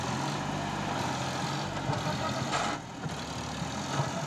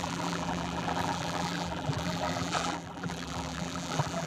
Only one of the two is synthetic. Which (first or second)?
second